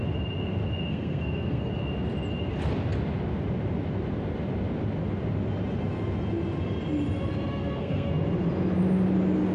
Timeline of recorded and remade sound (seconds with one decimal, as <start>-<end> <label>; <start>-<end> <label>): 0.0-0.9 recorded; 0.9-1.7 remade; 1.7-7.5 recorded; 7.5-8.1 remade; 8.1-9.5 recorded